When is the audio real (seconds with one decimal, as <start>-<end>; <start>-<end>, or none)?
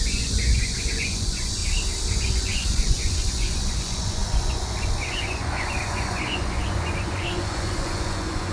1.6-2.2